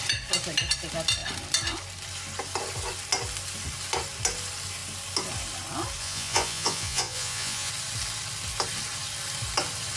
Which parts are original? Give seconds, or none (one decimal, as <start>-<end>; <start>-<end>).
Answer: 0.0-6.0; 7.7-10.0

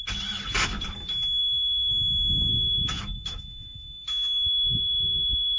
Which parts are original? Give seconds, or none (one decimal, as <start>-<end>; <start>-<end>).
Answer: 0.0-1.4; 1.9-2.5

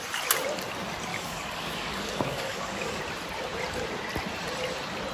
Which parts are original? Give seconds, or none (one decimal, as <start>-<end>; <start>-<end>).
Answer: 0.0-1.1; 3.0-5.1